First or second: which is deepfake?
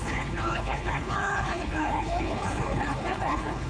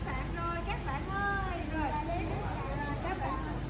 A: first